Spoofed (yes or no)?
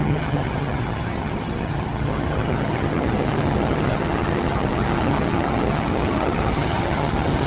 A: yes